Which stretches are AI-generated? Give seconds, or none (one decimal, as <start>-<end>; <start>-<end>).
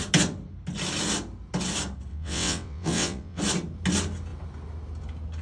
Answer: 2.1-3.4